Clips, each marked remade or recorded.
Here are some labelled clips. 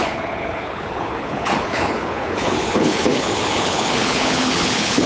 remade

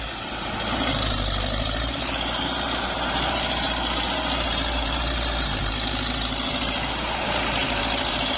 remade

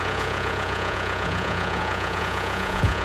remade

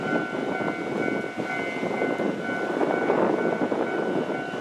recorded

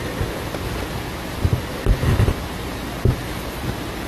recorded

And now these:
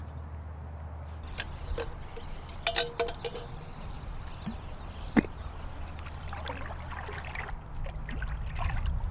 recorded